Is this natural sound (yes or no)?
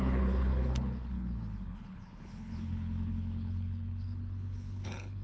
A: no